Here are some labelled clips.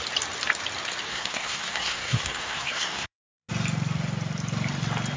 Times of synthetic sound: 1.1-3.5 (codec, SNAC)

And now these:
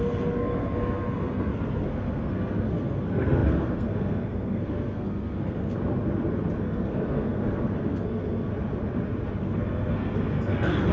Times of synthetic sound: 0.0-5.7 (codec, SNAC); 6.6-8.5; 9.4-10.9

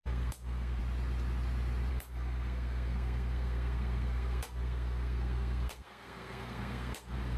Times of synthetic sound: 0.0-0.8 (codec, SNAC); 1.9-7.4

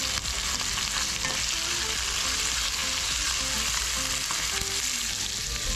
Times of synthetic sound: none